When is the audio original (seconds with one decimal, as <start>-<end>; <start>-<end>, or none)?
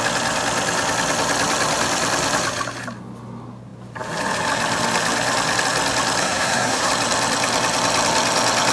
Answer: 0.0-6.2; 6.9-8.7